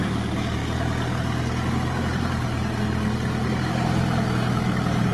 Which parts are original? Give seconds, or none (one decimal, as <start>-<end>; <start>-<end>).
0.0-5.1

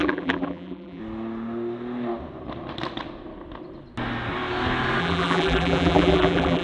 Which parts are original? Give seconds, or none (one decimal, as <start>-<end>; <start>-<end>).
1.0-5.0

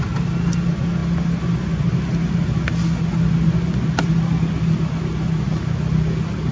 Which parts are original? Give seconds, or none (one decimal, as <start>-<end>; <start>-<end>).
0.0-6.5

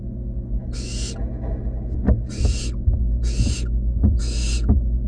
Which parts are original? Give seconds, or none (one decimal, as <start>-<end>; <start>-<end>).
0.0-5.1

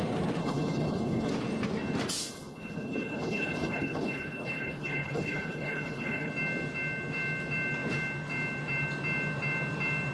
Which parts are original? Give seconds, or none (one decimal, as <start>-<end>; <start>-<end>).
0.0-0.4; 1.3-2.3; 6.3-10.1